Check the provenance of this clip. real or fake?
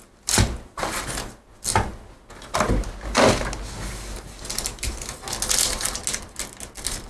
real